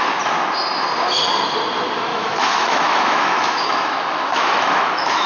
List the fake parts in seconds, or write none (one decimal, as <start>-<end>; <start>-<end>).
2.1-5.3